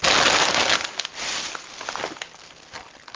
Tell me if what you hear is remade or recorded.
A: recorded